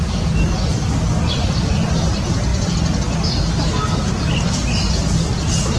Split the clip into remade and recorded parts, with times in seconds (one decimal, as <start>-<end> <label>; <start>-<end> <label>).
0.0-5.8 recorded